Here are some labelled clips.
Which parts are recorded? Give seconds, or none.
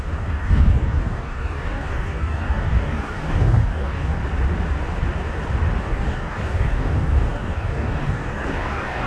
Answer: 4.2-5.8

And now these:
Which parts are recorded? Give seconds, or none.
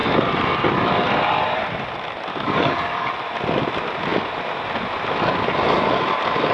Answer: 0.0-2.3; 3.1-6.5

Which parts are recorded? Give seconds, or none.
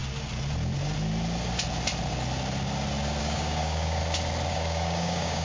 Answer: 0.0-3.2; 4.0-4.5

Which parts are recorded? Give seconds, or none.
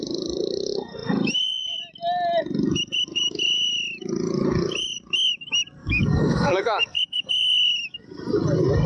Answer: 0.0-5.8; 7.3-8.9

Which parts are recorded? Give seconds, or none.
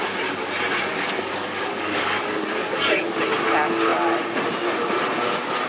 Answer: 0.0-0.9; 3.2-5.7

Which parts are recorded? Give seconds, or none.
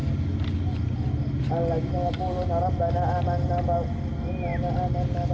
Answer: 0.0-5.3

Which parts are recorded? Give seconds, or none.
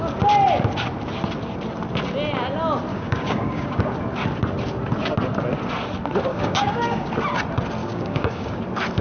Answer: 0.0-2.9; 3.8-6.3; 7.1-7.8; 8.6-9.0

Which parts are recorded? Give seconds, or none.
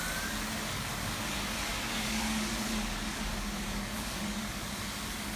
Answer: none